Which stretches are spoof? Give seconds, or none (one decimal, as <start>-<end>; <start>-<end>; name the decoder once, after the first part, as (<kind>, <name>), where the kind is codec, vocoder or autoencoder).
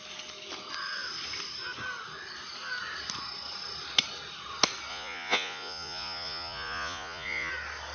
4.9-7.5 (vocoder, Vocos)